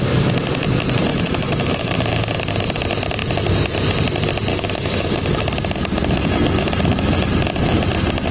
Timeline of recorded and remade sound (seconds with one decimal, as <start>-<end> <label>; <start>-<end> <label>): 0.0-1.1 recorded; 1.1-1.9 remade; 1.9-4.5 recorded; 4.5-5.4 remade; 5.4-8.3 recorded